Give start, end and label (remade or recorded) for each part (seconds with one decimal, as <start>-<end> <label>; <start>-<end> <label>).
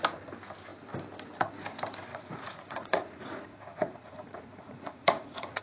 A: 0.0-2.1 recorded; 2.1-5.6 remade